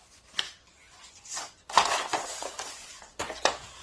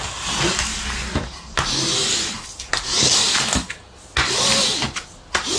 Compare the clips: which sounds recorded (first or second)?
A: second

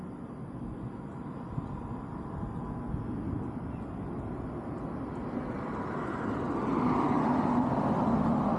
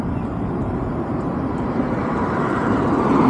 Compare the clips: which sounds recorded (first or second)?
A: first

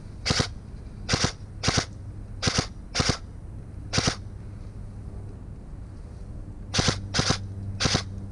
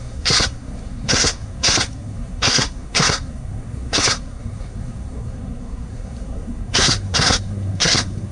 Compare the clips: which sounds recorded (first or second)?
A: first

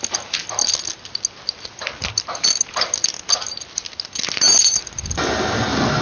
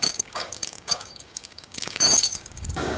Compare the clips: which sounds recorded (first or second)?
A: first